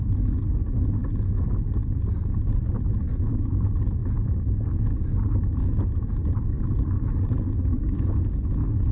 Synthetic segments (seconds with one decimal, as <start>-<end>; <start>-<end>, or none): none